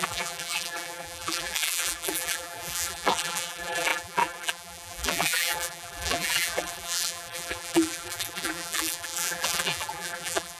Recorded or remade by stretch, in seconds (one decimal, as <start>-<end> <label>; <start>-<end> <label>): 0.0-10.6 remade